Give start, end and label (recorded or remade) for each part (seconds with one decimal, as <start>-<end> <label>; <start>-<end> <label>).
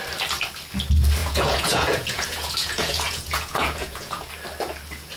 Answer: 0.0-1.2 recorded; 1.2-4.3 remade; 4.3-5.2 recorded